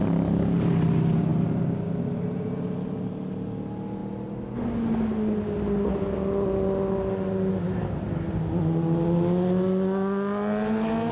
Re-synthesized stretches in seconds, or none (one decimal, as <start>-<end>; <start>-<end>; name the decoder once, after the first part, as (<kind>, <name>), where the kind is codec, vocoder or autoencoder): none